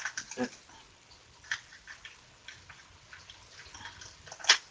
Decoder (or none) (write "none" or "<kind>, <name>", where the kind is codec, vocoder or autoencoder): none